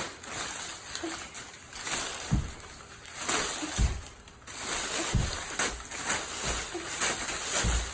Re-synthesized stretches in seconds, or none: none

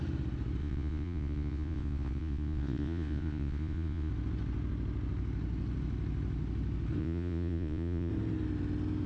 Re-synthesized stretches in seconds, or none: 0.6-4.1; 7.0-8.1